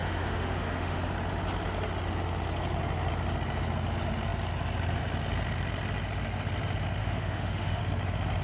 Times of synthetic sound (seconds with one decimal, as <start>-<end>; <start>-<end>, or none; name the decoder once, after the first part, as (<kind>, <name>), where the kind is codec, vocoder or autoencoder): 0.0-1.0 (autoencoder, DAC-VAE); 7.0-7.8